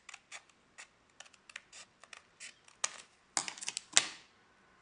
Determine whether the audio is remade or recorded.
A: recorded